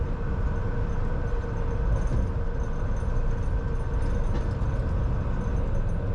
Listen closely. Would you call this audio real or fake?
real